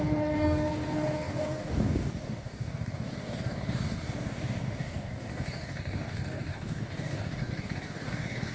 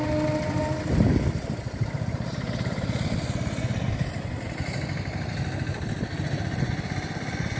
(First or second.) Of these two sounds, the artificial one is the first